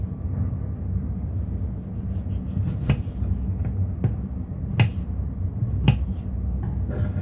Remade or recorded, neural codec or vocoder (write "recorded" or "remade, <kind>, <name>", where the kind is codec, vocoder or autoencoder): recorded